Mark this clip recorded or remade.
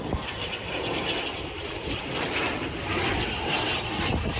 recorded